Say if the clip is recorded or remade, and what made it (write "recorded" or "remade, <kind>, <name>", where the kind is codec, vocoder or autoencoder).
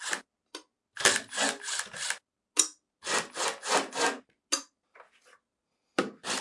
recorded